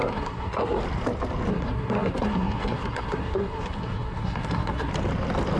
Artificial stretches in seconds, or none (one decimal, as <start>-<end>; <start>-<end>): 0.0-0.8; 1.5-4.9